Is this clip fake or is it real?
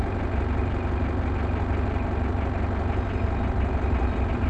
real